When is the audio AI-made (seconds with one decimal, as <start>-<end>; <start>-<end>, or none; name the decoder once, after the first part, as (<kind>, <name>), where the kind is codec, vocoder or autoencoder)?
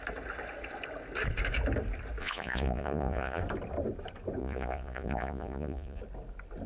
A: 2.2-3.4 (vocoder, Vocos); 4.4-6.0